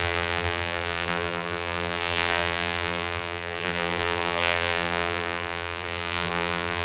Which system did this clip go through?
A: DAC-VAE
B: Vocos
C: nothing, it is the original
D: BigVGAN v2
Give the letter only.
D